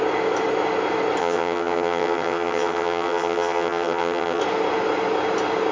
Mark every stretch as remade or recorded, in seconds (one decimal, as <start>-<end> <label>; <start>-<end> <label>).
0.0-1.2 recorded; 1.2-4.4 remade; 4.4-5.7 recorded